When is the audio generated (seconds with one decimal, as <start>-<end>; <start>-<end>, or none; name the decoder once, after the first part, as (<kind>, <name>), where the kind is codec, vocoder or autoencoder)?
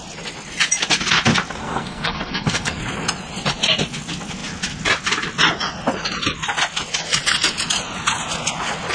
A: 1.6-2.8 (codec, SNAC)